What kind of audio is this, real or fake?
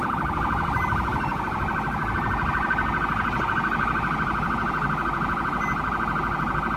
real